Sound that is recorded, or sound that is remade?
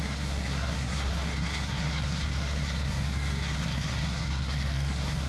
remade